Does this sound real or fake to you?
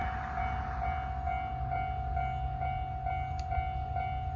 real